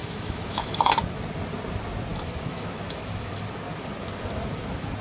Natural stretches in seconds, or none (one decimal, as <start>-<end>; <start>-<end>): 0.9-2.1; 3.3-5.0